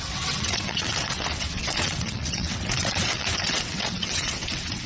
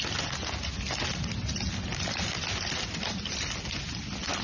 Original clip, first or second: second